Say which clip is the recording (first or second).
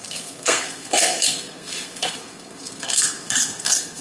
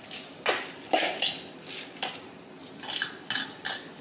second